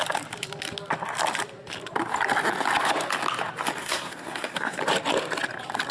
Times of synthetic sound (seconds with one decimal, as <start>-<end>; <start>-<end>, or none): 3.8-4.8